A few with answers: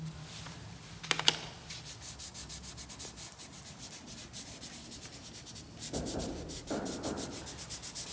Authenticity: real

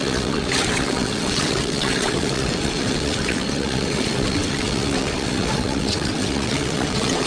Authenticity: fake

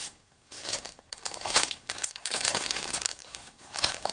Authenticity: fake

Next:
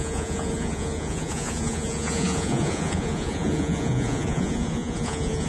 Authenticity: fake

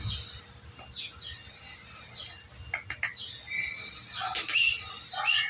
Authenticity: real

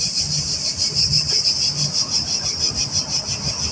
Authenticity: real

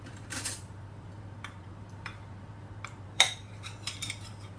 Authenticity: fake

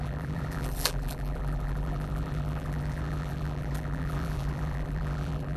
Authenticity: fake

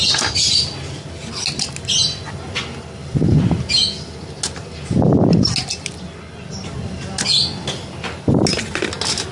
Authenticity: real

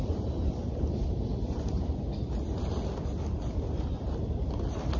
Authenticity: real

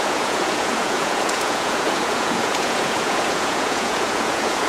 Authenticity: fake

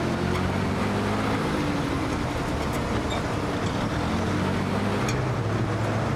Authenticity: real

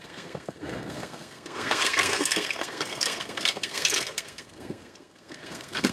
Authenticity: fake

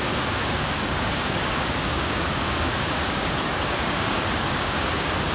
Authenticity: fake